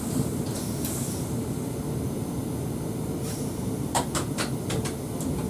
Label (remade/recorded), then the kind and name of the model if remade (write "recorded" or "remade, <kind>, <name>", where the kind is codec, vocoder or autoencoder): remade, vocoder, BigVGAN v2